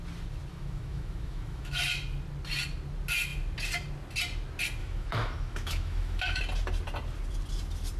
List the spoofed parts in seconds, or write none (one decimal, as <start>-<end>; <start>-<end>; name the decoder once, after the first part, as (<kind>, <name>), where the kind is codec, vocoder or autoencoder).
0.5-1.8 (autoencoder, DAC-VAE); 4.8-6.4